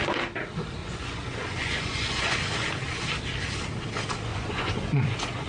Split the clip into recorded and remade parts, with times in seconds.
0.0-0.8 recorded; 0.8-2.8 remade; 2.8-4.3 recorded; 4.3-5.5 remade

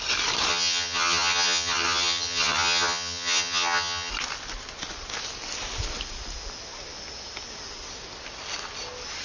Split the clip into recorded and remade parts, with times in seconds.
0.0-0.5 recorded; 0.5-4.1 remade; 4.1-9.2 recorded